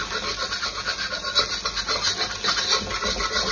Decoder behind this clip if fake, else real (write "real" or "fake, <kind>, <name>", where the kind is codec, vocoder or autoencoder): real